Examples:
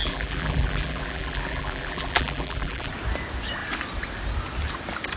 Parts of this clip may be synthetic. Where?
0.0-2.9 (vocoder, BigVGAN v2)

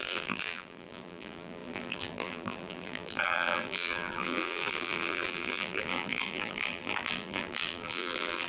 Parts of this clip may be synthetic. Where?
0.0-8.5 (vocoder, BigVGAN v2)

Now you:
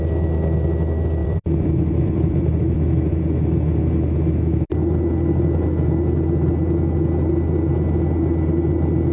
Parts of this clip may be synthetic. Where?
1.2-3.2 (vocoder, BigVGAN v2)

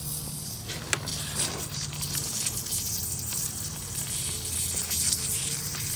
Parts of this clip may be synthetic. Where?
none

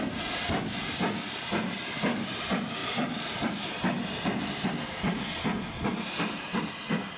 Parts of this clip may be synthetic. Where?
2.8-3.5 (vocoder, BigVGAN v2); 5.9-6.8

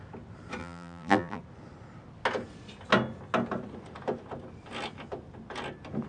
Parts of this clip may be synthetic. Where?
0.6-1.4 (vocoder, BigVGAN v2)